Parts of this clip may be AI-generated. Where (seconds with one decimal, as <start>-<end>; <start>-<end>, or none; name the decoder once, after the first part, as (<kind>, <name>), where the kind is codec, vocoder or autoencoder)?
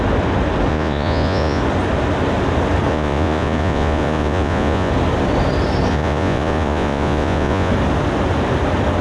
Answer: 0.7-1.6 (vocoder, Vocos); 2.9-4.9; 5.9-7.7